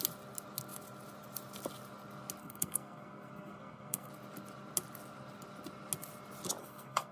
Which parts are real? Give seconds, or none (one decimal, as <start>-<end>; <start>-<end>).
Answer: 0.0-2.4; 4.1-6.6